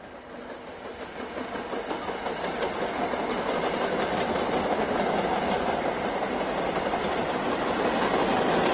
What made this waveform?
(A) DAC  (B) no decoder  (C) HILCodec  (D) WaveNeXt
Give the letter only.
B